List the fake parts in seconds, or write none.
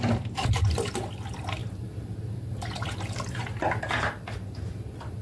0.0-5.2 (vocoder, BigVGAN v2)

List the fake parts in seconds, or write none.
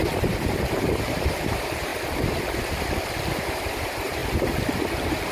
0.8-1.9 (vocoder, BigVGAN v2); 3.4-4.2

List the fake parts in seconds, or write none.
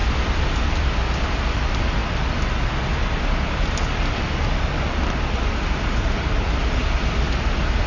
none